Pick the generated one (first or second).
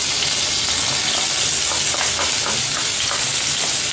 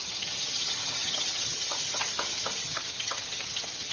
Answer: second